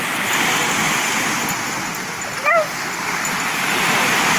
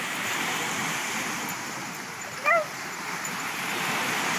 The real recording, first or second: first